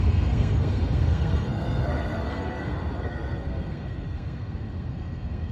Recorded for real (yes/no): no